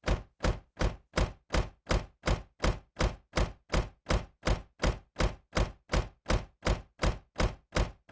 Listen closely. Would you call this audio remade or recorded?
recorded